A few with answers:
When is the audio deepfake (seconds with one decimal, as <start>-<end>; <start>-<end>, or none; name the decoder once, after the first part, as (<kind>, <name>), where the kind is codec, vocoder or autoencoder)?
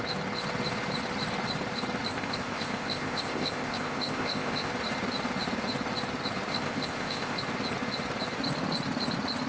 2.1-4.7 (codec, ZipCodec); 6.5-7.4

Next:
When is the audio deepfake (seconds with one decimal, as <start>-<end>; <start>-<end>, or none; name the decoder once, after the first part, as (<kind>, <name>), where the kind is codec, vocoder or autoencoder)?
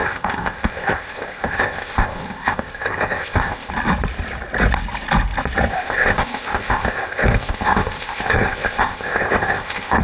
0.0-3.7 (codec, ZipCodec); 5.7-10.0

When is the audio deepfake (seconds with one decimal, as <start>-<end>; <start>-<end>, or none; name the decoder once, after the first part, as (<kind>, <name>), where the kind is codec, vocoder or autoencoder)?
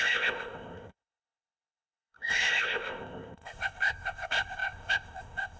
0.0-5.6 (codec, ZipCodec)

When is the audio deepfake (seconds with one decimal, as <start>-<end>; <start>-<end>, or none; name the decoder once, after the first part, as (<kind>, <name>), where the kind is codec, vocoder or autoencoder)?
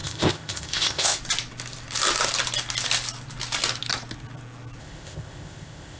0.0-1.2 (codec, ZipCodec); 4.8-6.0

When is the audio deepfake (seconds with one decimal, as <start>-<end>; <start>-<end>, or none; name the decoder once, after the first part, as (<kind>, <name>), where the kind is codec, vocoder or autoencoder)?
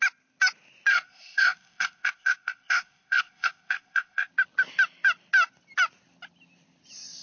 0.9-4.3 (codec, ZipCodec)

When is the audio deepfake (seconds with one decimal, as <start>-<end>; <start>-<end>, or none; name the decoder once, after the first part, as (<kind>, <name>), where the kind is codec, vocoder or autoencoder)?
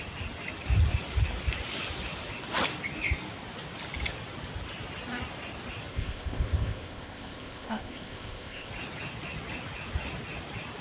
5.9-8.7 (codec, ZipCodec)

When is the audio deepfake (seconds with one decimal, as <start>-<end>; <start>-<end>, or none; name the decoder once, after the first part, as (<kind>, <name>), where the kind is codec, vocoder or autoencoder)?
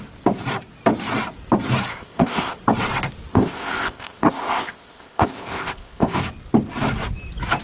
1.9-2.6 (codec, ZipCodec); 3.3-6.2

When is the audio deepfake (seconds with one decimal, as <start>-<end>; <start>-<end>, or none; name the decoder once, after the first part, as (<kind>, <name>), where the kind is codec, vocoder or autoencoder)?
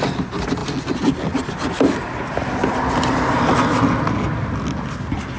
none